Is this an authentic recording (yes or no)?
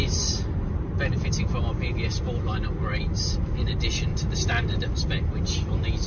yes